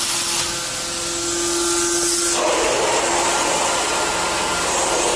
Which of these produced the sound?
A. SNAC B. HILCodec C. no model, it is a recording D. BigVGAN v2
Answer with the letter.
C